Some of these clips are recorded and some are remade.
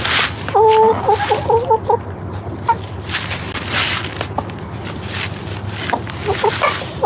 recorded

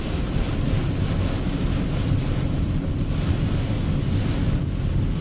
recorded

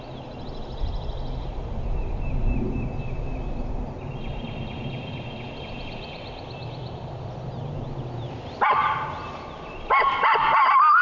recorded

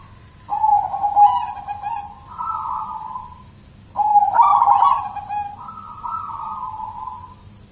recorded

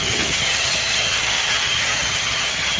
remade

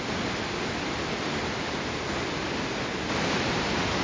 recorded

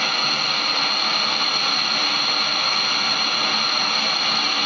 recorded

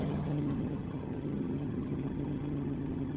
remade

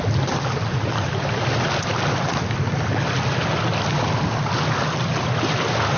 recorded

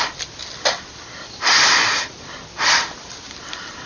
recorded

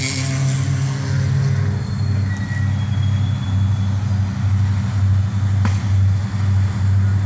recorded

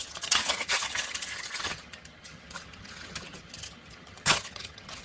remade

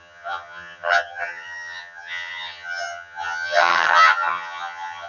remade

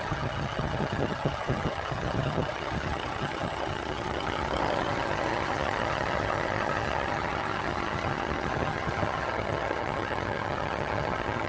remade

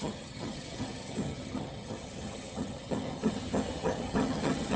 remade